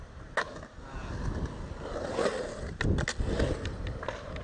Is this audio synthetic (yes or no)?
no